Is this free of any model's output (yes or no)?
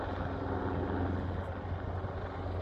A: yes